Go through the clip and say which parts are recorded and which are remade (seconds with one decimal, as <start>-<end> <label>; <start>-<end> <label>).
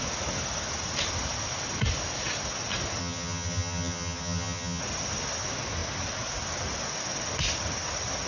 0.0-3.0 recorded; 3.0-4.8 remade; 4.8-8.3 recorded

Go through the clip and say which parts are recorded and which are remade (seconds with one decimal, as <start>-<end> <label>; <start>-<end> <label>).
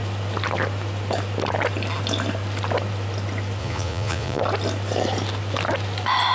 0.0-3.6 recorded; 3.6-4.4 remade; 4.4-6.3 recorded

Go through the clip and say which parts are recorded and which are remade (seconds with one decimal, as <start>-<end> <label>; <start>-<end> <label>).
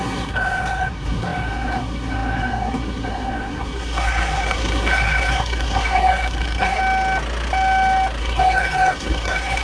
0.0-6.8 remade; 6.8-8.2 recorded; 8.2-9.6 remade